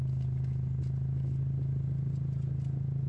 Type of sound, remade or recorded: recorded